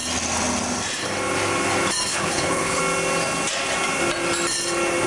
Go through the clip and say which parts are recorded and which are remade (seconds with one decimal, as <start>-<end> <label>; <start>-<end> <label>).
0.0-2.1 recorded; 2.1-2.8 remade; 2.8-5.1 recorded